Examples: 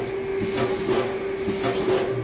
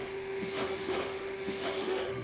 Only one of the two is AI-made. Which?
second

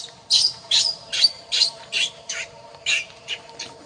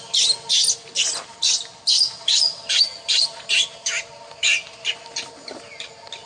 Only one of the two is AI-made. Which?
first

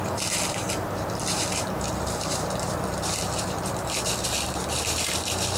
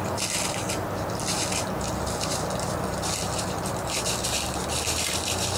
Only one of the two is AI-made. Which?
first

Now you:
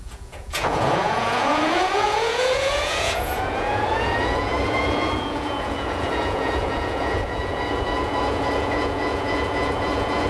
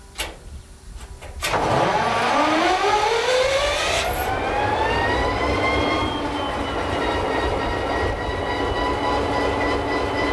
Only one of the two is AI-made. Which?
first